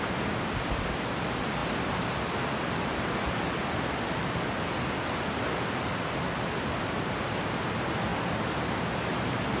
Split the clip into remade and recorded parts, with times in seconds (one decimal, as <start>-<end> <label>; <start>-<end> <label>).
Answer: 0.0-9.6 recorded